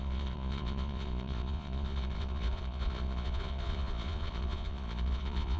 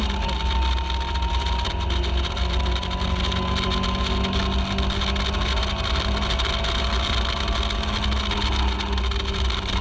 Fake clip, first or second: first